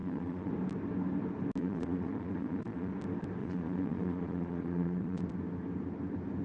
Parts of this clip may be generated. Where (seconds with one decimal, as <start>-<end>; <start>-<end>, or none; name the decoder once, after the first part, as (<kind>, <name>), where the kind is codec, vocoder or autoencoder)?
0.0-0.5 (vocoder, Vocos); 1.6-2.9; 3.4-5.2